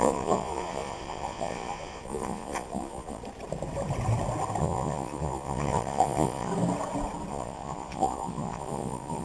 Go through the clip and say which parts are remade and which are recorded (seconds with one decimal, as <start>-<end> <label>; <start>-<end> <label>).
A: 0.0-3.2 remade; 3.2-4.6 recorded; 4.6-6.5 remade; 6.5-7.3 recorded; 7.3-9.2 remade